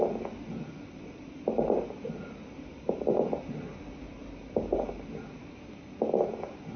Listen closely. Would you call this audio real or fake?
real